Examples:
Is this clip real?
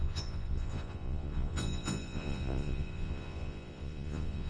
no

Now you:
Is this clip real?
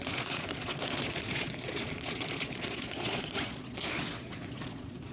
no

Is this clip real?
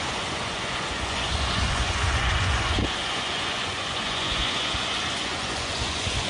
no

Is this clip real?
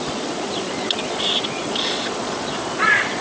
no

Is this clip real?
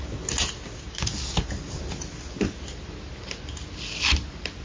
yes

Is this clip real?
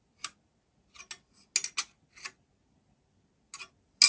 yes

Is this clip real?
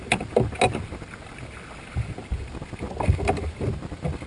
yes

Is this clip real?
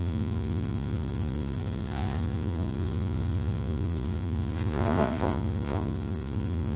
no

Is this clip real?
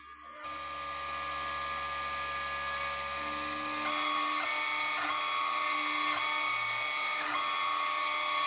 yes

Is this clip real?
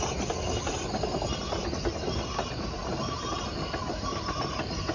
yes